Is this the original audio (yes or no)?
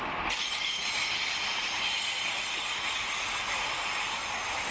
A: yes